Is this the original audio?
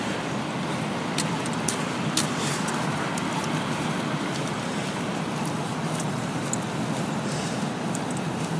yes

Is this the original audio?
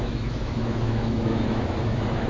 no